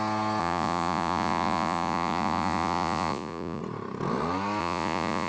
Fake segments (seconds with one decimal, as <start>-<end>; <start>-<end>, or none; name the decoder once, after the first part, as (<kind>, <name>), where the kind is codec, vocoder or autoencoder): 0.4-3.6 (vocoder, Vocos); 4.6-5.3